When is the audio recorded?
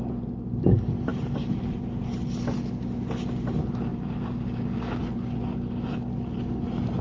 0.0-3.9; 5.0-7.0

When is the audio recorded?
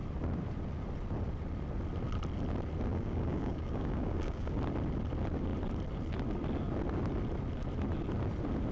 0.0-2.9; 4.6-8.7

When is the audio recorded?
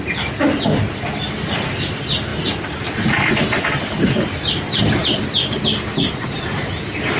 0.0-7.2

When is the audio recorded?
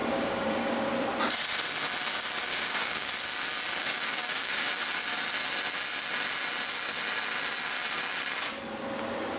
0.7-2.5; 3.1-3.8; 4.7-9.4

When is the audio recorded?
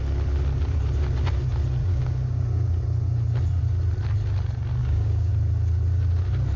0.0-1.8; 2.4-4.8; 5.3-6.6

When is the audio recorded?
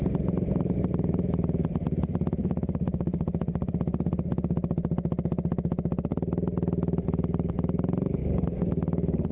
0.0-2.4; 3.7-8.2